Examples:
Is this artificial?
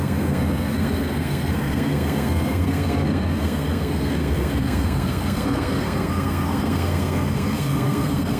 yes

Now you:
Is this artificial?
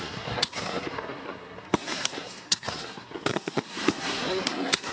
yes